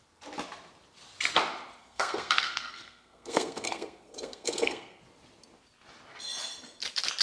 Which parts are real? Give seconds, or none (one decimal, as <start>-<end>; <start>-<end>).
0.0-1.8; 5.0-7.2